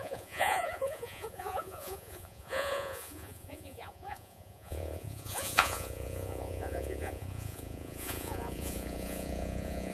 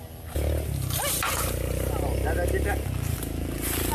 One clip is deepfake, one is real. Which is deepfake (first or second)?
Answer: first